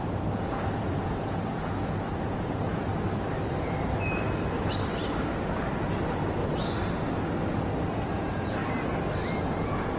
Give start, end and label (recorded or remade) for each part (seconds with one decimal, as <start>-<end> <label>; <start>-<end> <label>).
0.0-2.9 remade; 2.9-7.9 recorded; 7.9-8.6 remade; 8.6-9.4 recorded; 9.4-10.0 remade